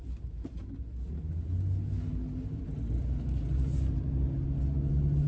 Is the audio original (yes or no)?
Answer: yes